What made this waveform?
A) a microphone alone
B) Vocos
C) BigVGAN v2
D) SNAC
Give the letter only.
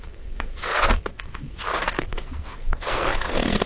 D